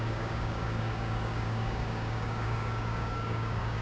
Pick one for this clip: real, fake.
fake